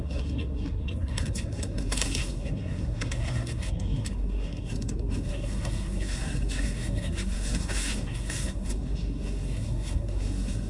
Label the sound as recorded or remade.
remade